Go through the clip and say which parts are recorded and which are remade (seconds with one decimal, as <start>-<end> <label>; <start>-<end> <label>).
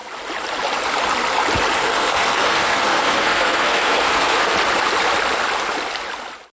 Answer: 0.0-1.8 recorded; 1.8-4.5 remade; 4.5-6.6 recorded